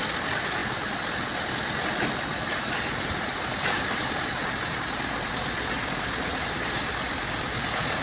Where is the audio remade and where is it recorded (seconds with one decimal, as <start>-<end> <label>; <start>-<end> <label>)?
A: 0.0-2.3 recorded; 2.3-4.8 remade; 4.8-6.3 recorded; 6.3-6.9 remade; 6.9-8.0 recorded